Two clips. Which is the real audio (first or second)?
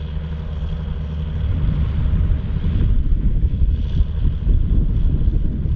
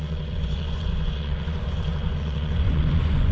first